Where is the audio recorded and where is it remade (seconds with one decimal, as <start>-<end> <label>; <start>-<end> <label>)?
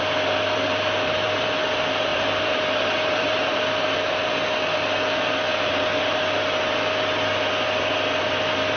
0.0-2.1 recorded; 2.1-3.6 remade; 3.6-5.5 recorded; 5.5-6.2 remade; 6.2-8.8 recorded